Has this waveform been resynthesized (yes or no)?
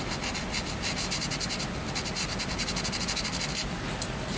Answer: no